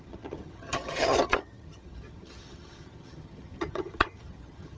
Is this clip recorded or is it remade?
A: remade